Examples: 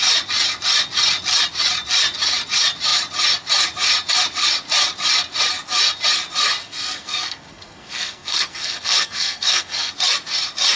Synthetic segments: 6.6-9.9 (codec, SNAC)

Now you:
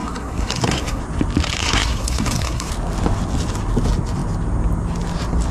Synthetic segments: 0.0-1.0 (codec, SNAC); 1.6-2.7

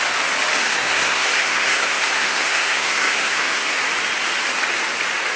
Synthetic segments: 0.6-3.8 (codec, SNAC)

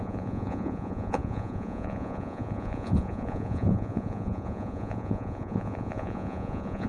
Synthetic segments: 0.0-6.9 (vocoder, Vocos)

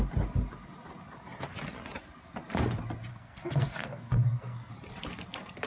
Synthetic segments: 3.1-4.7 (codec, SNAC)